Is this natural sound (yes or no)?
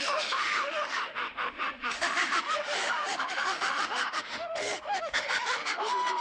no